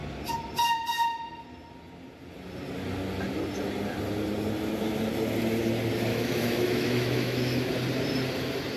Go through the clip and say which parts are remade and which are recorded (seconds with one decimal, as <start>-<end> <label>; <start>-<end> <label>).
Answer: 0.0-6.1 recorded; 6.1-7.7 remade; 7.7-8.8 recorded